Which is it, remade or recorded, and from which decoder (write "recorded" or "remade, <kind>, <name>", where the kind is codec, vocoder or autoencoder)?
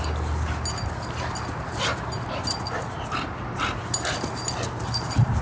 recorded